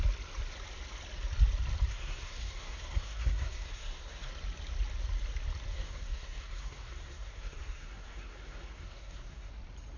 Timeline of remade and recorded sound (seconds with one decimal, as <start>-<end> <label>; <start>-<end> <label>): 0.0-1.9 recorded; 1.9-4.3 remade; 4.3-5.7 recorded; 5.7-9.5 remade; 9.5-10.0 recorded